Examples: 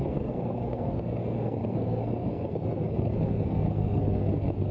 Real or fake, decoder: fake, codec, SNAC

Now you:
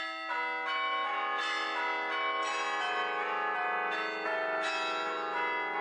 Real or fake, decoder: real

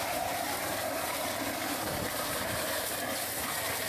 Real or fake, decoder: real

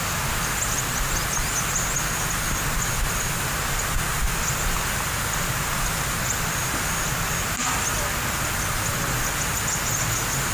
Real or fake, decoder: real